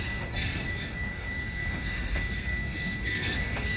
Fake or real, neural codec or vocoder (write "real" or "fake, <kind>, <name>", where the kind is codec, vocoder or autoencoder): fake, codec, SNAC